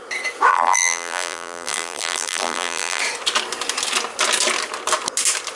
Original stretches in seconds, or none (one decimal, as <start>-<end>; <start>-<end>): 0.0-0.5; 3.0-5.6

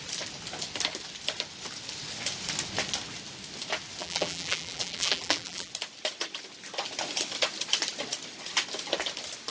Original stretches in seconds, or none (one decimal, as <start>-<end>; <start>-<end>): 0.0-4.0; 5.7-9.5